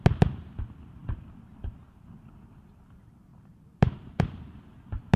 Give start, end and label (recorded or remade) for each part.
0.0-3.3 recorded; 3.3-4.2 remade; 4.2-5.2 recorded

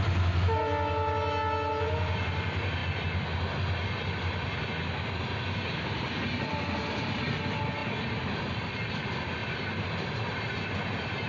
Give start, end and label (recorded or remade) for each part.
0.0-9.4 recorded; 9.4-10.2 remade; 10.2-11.3 recorded

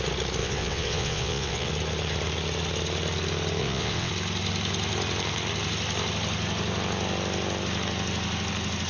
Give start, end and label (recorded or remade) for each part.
0.0-0.4 recorded; 0.4-1.7 remade; 1.7-3.6 recorded; 3.6-4.1 remade; 4.1-8.9 recorded

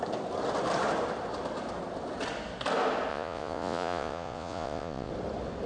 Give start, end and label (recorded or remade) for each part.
0.0-3.1 recorded; 3.1-5.1 remade; 5.1-5.7 recorded